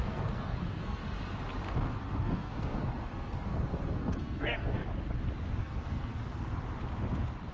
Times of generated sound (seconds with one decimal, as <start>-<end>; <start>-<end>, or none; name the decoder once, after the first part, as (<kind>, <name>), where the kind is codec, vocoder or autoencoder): 0.0-1.0 (codec, SNAC); 1.7-4.8; 5.6-6.2